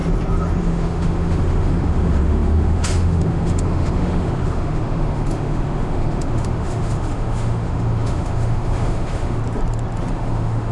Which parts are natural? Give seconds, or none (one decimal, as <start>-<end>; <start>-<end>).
0.0-0.6; 9.4-10.1